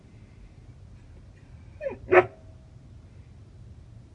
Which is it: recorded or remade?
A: recorded